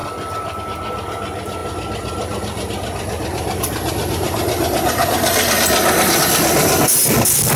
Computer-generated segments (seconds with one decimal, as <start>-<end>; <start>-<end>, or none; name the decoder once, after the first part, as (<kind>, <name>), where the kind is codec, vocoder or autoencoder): none